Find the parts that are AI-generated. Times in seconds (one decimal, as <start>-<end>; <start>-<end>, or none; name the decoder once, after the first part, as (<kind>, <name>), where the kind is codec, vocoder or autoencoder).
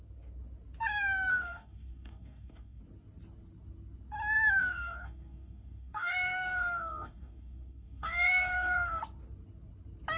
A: 1.3-2.8 (codec, DAC); 4.6-9.0